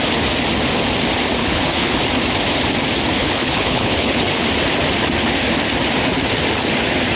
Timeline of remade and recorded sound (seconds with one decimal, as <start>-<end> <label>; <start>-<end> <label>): 0.0-1.4 recorded; 1.4-2.0 remade; 2.0-3.2 recorded; 3.2-4.2 remade; 4.2-7.2 recorded